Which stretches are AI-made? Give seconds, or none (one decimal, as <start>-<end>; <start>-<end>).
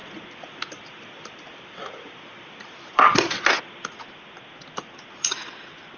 0.0-3.6